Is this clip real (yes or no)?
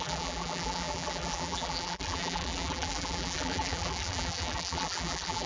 no